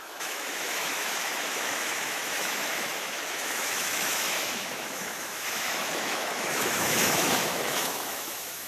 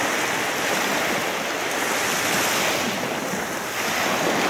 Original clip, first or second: second